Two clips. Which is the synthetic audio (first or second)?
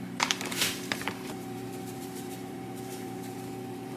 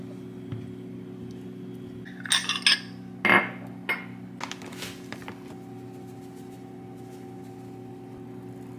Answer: first